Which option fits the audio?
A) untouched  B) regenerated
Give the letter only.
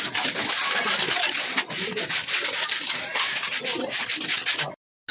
A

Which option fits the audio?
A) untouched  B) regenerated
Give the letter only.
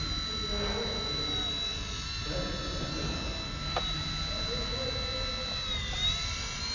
A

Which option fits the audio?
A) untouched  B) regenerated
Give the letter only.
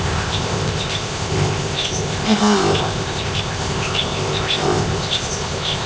B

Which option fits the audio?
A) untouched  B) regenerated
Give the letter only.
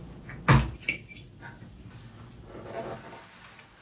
A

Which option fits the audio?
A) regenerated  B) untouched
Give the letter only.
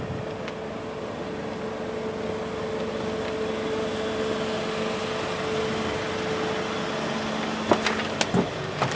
B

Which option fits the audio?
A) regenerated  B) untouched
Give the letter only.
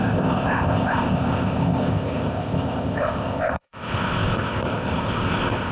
A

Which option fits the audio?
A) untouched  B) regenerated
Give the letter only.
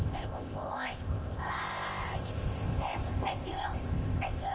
B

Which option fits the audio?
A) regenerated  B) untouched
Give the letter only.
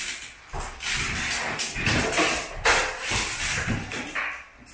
B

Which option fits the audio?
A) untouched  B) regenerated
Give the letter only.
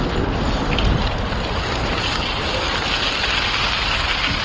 A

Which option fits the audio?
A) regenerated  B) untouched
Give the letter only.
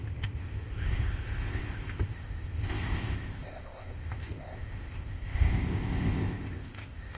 A